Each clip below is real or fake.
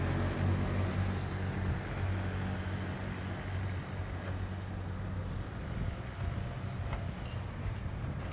real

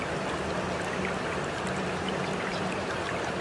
real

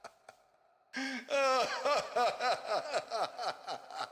real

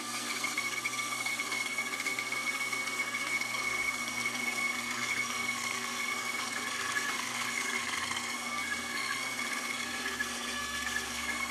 fake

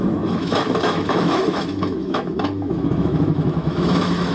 fake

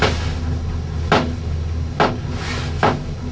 real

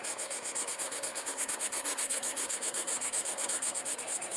fake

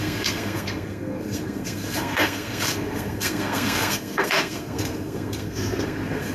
fake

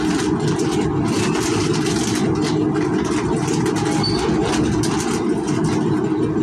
real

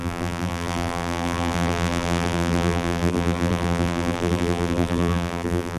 fake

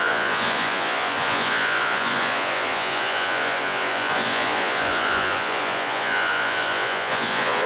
fake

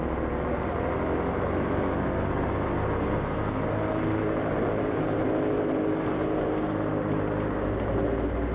real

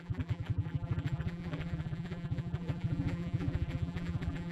fake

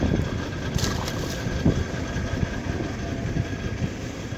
real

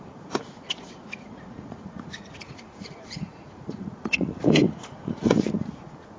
fake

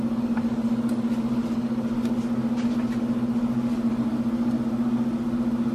real